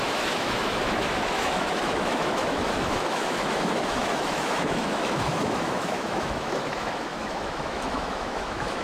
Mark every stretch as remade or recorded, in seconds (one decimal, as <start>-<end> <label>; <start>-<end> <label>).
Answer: 0.0-8.8 remade